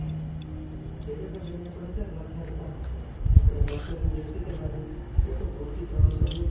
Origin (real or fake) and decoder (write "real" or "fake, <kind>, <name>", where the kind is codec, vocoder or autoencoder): real